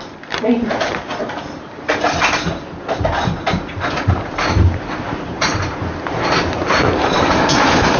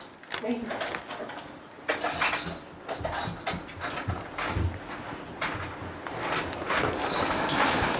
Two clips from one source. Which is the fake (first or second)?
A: first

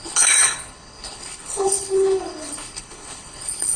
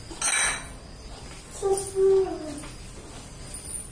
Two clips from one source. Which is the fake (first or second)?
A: first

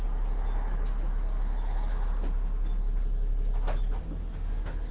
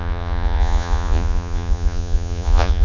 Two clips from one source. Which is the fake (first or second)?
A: second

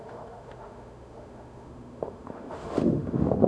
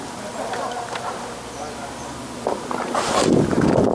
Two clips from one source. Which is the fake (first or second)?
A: first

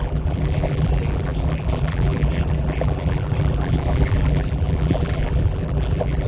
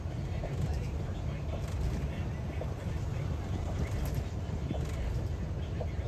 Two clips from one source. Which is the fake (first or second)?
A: first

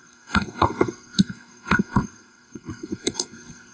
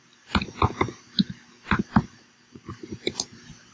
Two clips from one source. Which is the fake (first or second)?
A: first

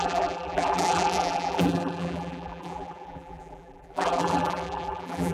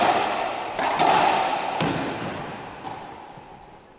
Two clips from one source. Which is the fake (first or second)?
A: first